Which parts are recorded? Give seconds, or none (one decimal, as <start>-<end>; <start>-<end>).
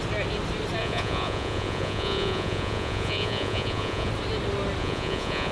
0.0-0.8; 4.1-4.8